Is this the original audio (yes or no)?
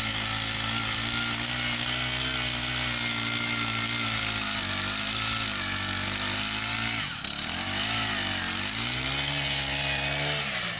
yes